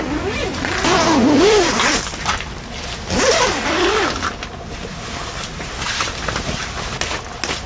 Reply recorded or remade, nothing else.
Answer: recorded